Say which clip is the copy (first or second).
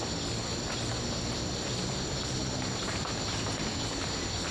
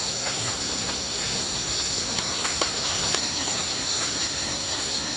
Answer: second